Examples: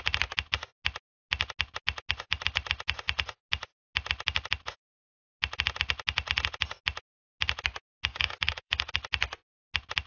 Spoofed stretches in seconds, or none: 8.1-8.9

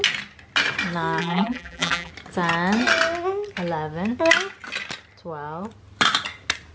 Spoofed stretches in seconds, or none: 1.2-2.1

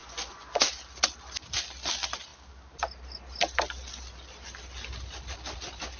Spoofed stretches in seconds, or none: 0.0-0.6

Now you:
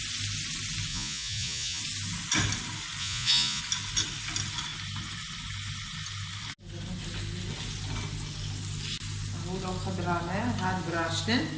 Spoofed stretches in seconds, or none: 0.9-1.8; 3.0-3.6

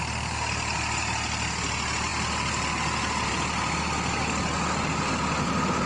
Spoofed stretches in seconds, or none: none